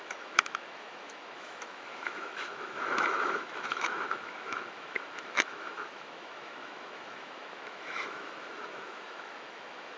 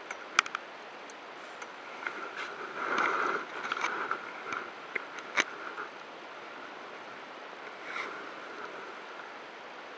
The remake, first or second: first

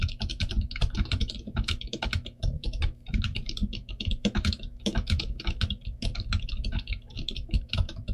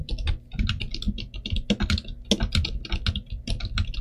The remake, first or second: first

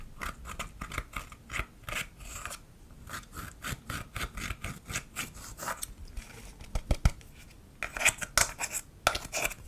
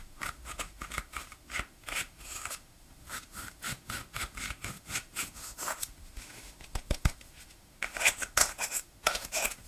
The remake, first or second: second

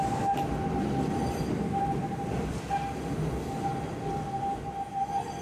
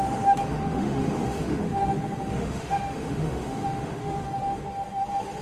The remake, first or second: second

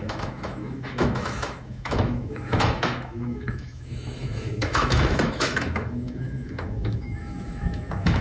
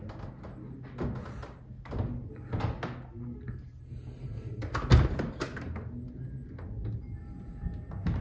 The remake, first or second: first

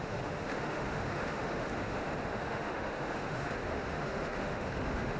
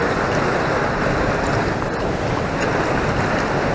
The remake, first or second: first